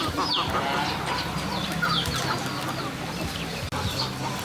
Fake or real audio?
real